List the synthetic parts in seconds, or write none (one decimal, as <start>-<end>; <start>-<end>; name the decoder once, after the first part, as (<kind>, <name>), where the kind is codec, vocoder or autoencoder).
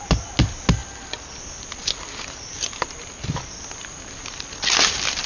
none